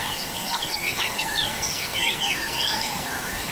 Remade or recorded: remade